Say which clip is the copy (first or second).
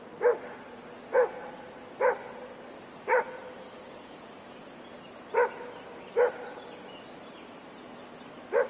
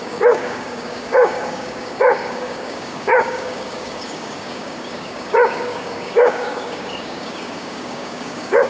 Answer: second